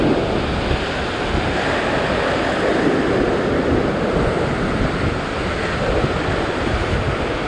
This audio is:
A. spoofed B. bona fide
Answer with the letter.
B